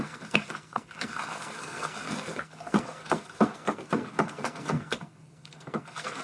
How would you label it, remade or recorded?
remade